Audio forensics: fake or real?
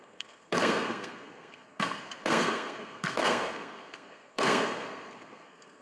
fake